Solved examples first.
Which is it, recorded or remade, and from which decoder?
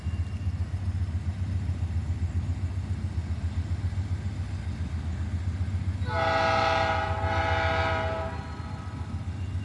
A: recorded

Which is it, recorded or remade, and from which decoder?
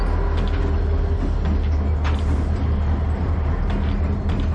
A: recorded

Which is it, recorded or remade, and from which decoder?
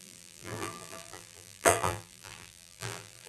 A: remade, vocoder, BigVGAN v2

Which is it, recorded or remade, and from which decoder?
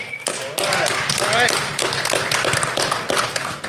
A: recorded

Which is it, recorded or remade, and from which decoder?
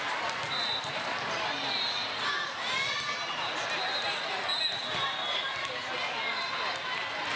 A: recorded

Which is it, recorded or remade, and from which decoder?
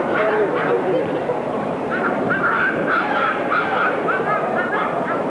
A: remade, vocoder, BigVGAN v2